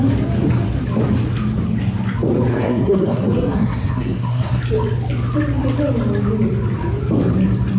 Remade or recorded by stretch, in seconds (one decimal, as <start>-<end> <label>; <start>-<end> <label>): 0.0-2.5 recorded; 2.5-4.6 remade; 4.6-7.8 recorded